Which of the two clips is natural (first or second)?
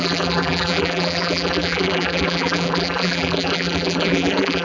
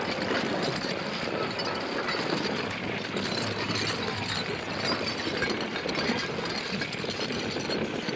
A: second